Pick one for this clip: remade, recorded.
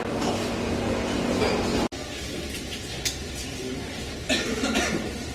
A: recorded